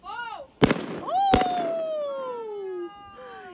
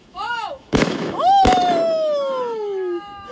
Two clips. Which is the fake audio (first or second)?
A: second